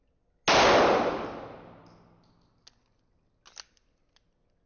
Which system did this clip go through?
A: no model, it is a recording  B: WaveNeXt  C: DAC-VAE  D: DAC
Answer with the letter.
A